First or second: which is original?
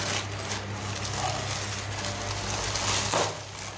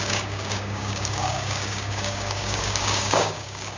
first